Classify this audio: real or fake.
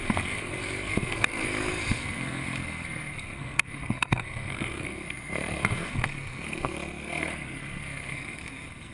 fake